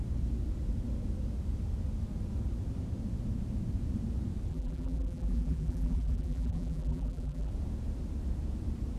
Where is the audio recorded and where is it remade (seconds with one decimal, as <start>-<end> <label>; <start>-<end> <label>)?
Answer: 0.0-4.5 recorded; 4.5-7.5 remade; 7.5-9.0 recorded